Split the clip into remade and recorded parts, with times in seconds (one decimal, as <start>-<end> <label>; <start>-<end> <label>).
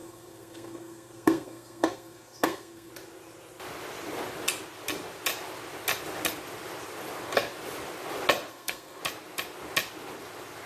0.0-2.9 remade; 2.9-8.5 recorded; 8.5-9.0 remade; 9.0-10.7 recorded